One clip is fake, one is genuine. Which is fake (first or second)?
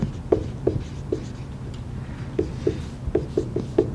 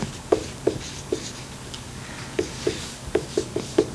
second